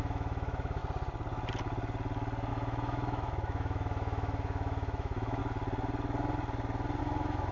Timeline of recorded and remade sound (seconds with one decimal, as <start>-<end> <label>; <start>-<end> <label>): 0.0-0.8 remade; 0.8-2.5 recorded; 2.5-5.4 remade; 5.4-7.0 recorded; 7.0-7.5 remade